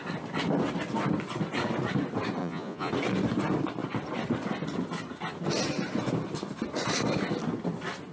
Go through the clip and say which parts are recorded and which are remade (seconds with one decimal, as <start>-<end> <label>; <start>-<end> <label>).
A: 0.0-2.4 recorded; 2.4-2.9 remade; 2.9-8.1 recorded